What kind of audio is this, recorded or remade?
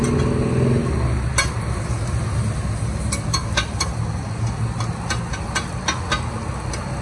recorded